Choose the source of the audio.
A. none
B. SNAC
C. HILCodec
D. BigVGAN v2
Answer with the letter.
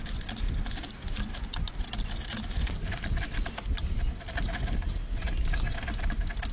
A